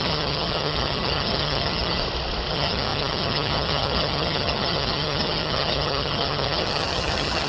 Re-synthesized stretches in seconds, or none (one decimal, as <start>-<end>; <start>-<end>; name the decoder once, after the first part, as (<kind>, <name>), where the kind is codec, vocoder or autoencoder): 0.0-2.0 (vocoder, HiFi-GAN); 2.5-7.5

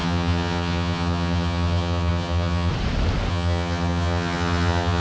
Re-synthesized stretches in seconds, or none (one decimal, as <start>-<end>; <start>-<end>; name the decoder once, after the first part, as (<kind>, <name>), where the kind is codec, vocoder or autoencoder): 0.0-2.7 (vocoder, HiFi-GAN); 3.3-5.0

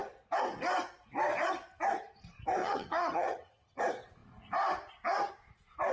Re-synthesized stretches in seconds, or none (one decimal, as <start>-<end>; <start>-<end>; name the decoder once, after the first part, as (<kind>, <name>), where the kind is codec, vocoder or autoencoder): 2.6-3.8 (vocoder, HiFi-GAN)

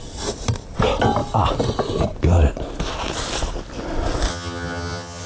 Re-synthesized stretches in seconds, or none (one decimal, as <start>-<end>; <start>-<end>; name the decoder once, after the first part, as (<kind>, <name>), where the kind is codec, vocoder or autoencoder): 4.3-5.3 (vocoder, HiFi-GAN)

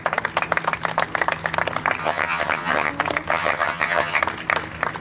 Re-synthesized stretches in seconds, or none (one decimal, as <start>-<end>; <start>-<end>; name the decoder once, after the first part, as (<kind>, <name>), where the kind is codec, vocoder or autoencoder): 2.0-2.9 (vocoder, HiFi-GAN); 3.3-4.2

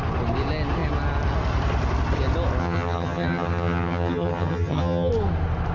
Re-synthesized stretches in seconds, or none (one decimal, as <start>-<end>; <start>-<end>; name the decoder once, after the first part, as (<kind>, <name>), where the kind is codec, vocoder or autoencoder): 2.6-5.1 (vocoder, HiFi-GAN)